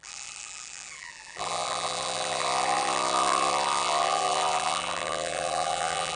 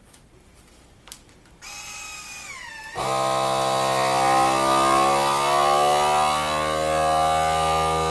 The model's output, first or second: first